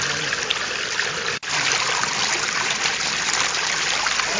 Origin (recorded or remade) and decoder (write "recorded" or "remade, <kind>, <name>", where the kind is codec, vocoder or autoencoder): recorded